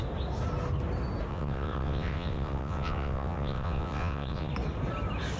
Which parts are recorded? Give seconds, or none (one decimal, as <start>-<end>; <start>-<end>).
0.0-1.3; 4.5-5.4